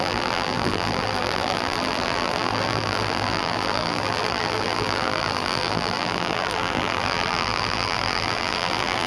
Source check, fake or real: fake